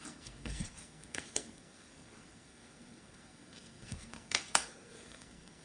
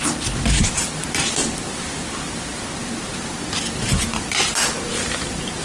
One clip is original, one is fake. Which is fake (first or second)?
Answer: first